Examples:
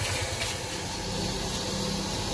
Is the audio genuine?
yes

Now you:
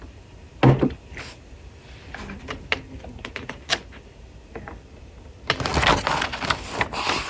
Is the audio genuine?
yes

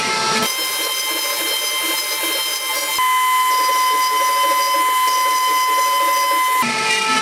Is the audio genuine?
yes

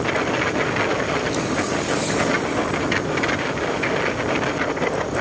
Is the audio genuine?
yes